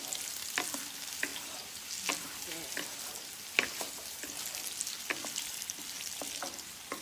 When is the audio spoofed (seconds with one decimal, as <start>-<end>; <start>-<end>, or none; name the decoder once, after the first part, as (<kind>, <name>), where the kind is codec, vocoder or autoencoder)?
none